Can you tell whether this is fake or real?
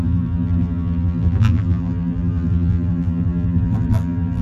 fake